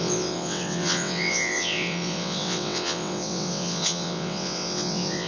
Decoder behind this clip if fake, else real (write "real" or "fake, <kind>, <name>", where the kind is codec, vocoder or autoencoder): fake, vocoder, WaveNeXt